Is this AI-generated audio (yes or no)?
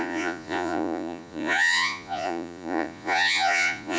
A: yes